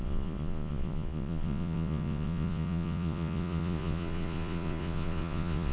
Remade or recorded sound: remade